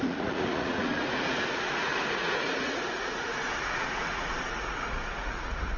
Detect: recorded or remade remade